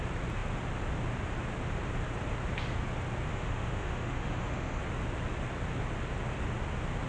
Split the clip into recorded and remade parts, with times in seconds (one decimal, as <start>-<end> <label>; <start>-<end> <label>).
0.0-3.3 recorded; 3.3-4.8 remade; 4.8-7.1 recorded